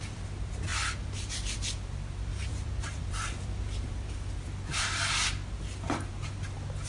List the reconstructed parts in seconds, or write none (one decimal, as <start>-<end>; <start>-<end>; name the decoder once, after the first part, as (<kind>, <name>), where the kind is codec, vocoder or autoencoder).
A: 0.7-4.8 (vocoder, BigVGAN v2)